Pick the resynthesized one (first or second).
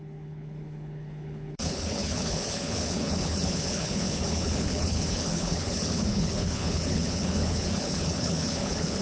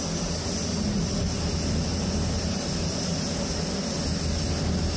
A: first